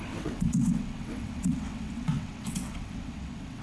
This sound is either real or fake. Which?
fake